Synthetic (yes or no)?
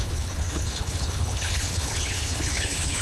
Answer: yes